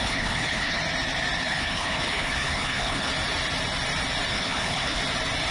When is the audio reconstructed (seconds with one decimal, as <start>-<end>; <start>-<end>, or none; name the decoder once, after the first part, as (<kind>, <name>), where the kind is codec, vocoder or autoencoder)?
0.0-0.8 (codec, HILCodec); 1.4-3.1; 4.3-5.0